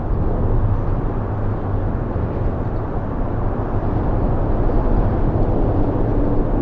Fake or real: real